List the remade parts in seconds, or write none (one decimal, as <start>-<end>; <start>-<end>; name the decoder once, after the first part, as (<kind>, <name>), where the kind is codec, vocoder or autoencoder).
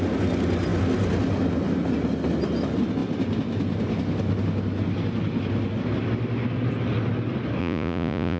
7.6-8.4 (vocoder, Vocos)